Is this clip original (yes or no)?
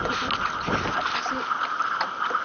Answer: yes